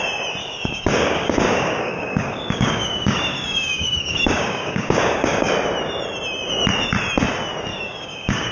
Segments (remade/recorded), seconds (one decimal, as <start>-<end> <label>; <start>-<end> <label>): 0.0-0.4 recorded; 0.4-5.5 remade; 5.5-7.7 recorded; 7.7-8.5 remade